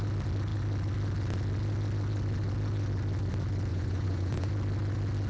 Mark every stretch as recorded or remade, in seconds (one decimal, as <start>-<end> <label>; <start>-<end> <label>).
0.0-3.7 recorded; 3.7-4.5 remade; 4.5-5.3 recorded